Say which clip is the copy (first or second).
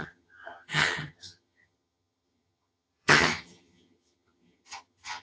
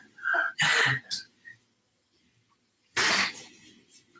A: first